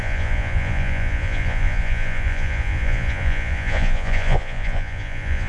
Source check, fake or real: fake